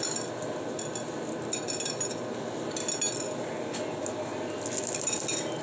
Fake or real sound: real